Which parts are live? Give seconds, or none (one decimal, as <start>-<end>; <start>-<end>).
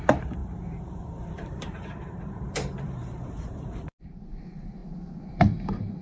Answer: 0.0-0.4; 4.0-6.0